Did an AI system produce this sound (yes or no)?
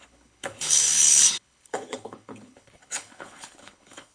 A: yes